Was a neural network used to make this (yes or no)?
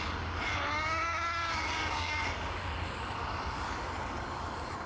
yes